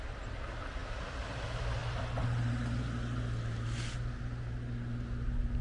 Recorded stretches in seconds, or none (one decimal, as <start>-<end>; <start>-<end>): 0.0-5.6